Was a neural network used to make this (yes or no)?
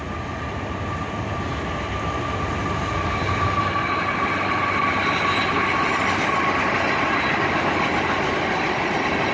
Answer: no